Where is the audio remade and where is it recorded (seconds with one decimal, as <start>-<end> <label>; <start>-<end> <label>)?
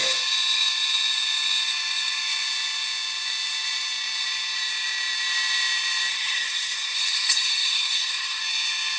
0.0-6.1 recorded; 6.1-8.4 remade; 8.4-9.0 recorded